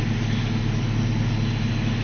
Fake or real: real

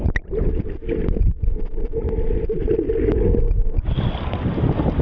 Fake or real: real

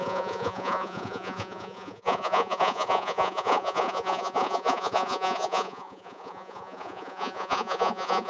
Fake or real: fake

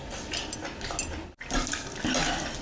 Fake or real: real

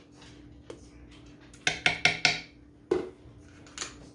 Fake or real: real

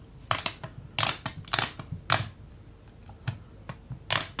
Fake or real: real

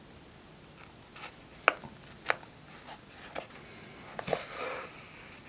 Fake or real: real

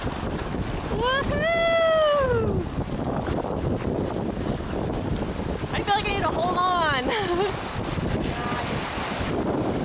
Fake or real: real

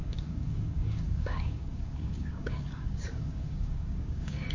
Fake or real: fake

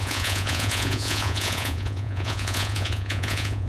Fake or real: fake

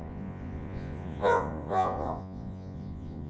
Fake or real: fake